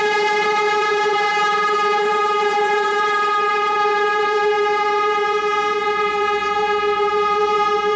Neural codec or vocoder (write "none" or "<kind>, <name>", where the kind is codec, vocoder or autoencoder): vocoder, Vocos